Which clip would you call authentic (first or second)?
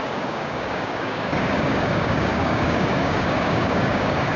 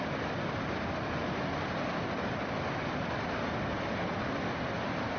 second